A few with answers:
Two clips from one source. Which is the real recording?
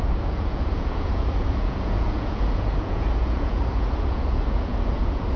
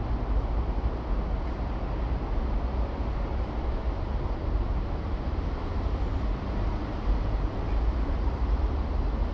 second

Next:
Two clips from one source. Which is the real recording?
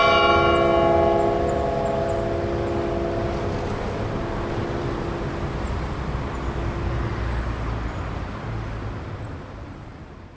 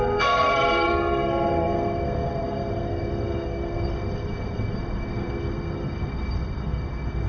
first